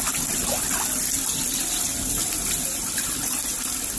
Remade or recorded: recorded